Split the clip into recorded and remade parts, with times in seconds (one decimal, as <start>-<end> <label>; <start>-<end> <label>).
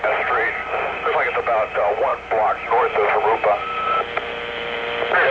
0.0-5.3 recorded